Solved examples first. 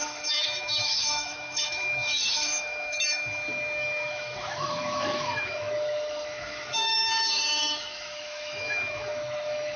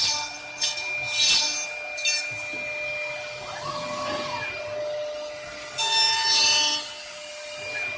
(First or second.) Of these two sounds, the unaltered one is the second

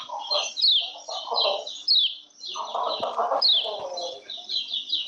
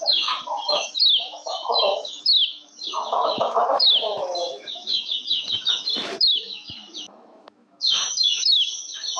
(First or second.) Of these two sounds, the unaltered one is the first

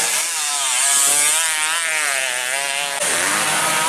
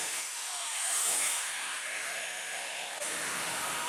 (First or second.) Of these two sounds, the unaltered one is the first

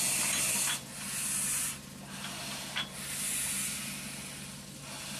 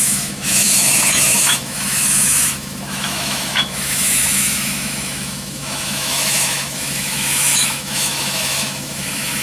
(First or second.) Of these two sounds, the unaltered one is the first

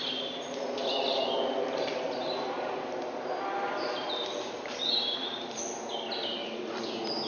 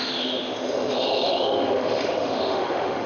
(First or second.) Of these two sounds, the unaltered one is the first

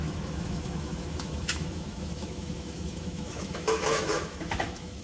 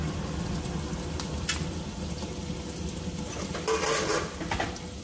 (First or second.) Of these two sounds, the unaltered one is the second